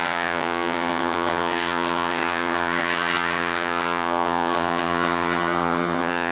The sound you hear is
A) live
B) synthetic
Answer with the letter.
B